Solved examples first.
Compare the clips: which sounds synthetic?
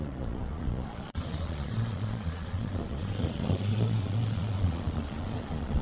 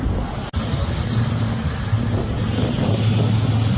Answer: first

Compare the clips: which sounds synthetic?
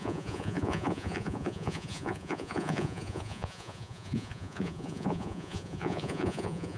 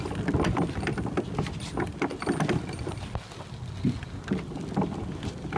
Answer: first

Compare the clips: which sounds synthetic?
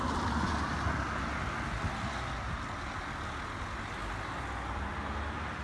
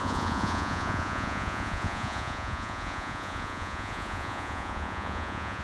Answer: second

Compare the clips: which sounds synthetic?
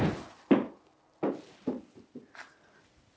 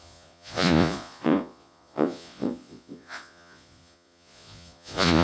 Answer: second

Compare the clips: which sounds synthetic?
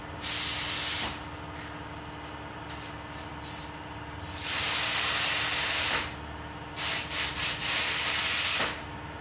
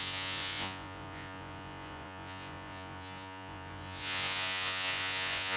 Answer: second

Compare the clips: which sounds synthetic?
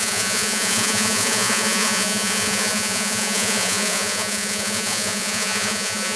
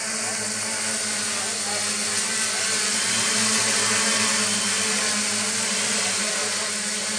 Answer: first